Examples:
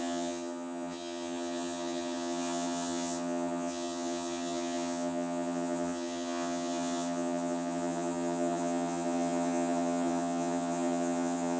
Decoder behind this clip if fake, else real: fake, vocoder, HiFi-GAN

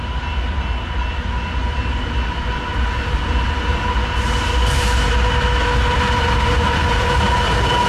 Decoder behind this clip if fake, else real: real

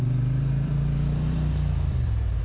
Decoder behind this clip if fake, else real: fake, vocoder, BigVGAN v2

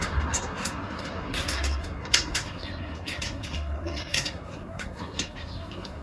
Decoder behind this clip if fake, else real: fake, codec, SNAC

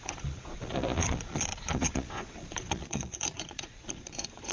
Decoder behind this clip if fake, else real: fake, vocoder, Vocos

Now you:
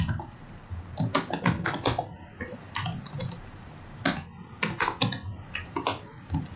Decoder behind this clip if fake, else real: real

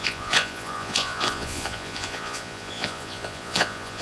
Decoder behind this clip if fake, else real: fake, vocoder, Vocos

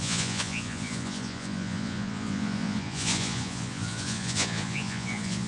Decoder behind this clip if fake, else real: fake, vocoder, Vocos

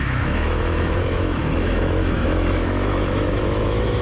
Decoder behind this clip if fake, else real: fake, autoencoder, DAC-VAE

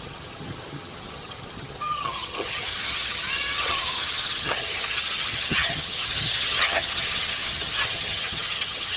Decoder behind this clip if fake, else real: fake, vocoder, HiFi-GAN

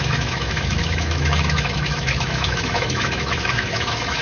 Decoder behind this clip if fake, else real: fake, autoencoder, DAC-VAE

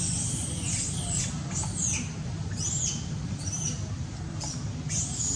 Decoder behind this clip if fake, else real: real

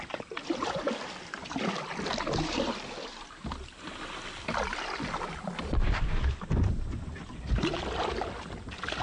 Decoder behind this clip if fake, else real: real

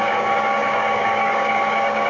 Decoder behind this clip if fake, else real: fake, codec, DAC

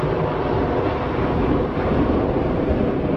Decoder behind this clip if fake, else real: real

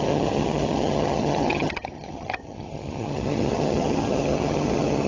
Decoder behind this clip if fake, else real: fake, vocoder, HiFi-GAN